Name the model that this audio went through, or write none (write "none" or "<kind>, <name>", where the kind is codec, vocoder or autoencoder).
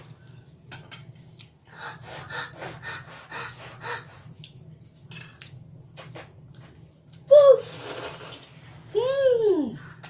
none